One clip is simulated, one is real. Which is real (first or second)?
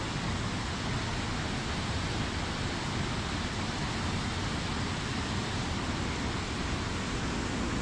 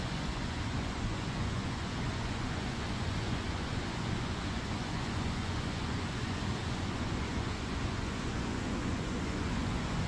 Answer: first